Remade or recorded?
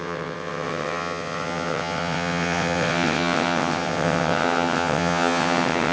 remade